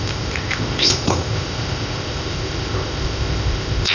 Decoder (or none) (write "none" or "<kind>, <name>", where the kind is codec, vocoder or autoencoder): codec, ZipCodec